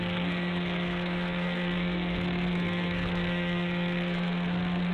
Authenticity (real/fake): fake